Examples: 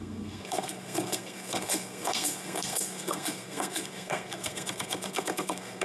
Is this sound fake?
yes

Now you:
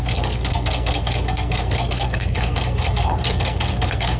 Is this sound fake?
yes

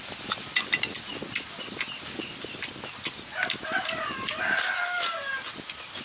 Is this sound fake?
no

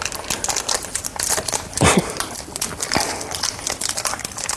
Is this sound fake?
no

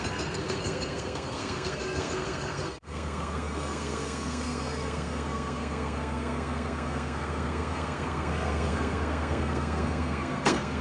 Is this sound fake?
yes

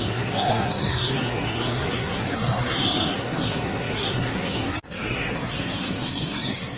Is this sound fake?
yes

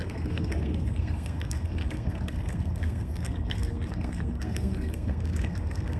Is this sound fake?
yes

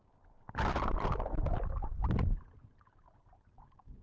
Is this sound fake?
no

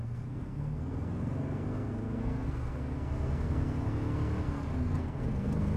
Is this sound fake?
yes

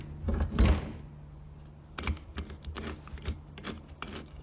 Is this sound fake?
no